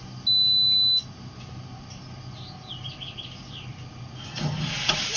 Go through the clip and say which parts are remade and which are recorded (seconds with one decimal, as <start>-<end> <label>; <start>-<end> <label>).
0.0-5.2 recorded